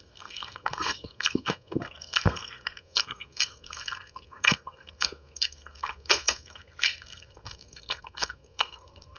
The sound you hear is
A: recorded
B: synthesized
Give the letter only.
B